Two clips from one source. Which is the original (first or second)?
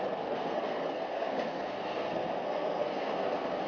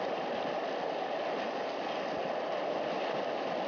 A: second